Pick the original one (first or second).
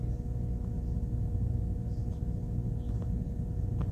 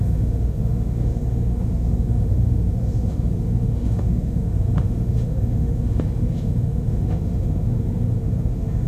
first